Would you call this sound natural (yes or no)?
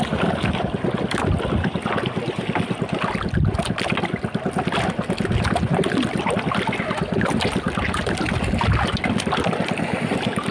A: yes